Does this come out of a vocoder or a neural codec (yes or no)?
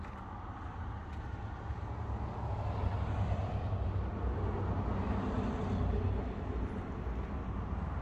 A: no